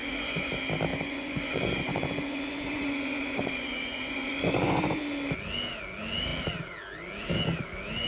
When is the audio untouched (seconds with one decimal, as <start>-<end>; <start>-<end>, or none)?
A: 0.5-0.9; 5.0-8.1